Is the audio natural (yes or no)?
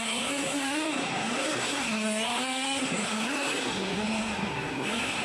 no